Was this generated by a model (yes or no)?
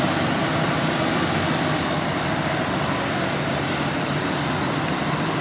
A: no